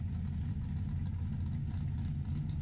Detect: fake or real real